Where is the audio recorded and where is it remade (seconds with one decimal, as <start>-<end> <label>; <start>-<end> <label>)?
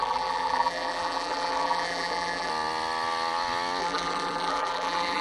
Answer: 0.0-2.5 remade; 2.5-3.8 recorded; 3.8-5.2 remade